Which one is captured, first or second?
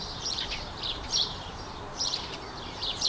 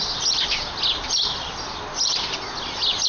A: second